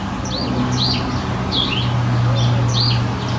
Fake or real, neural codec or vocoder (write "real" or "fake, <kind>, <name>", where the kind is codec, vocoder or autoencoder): real